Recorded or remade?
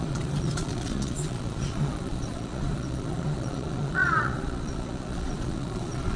remade